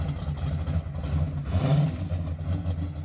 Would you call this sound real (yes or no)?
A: yes